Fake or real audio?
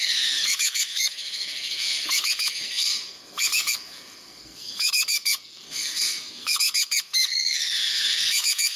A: fake